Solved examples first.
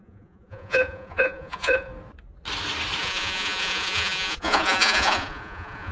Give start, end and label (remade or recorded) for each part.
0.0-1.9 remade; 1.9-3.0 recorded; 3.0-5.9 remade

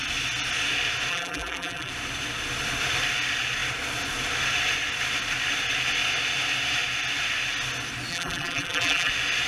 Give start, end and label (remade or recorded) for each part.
0.0-1.1 recorded; 1.1-1.9 remade; 1.9-8.1 recorded; 8.1-9.1 remade; 9.1-9.5 recorded

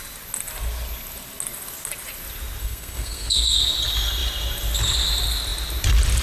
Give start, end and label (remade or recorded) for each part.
0.0-2.6 recorded; 2.6-3.6 remade; 3.6-6.2 recorded